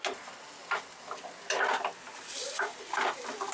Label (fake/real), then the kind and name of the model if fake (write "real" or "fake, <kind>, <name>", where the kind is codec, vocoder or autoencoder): real